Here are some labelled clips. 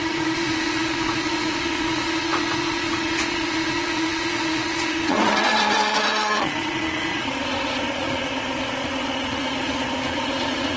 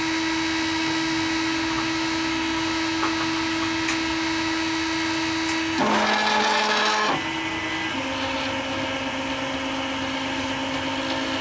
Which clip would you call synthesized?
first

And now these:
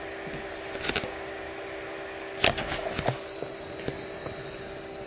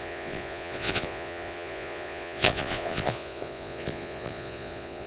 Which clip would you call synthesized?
second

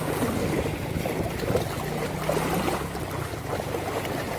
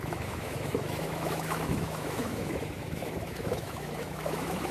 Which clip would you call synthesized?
second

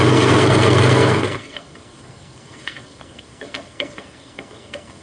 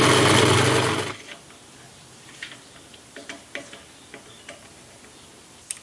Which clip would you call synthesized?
first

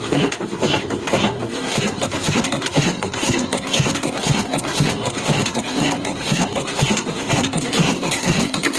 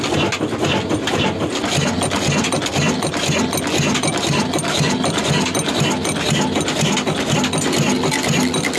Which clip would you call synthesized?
first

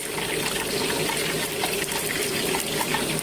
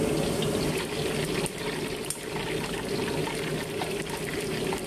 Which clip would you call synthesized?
first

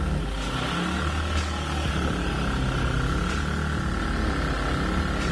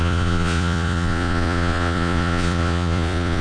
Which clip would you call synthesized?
second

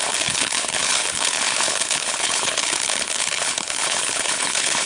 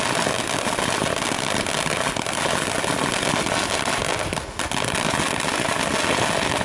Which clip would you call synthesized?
first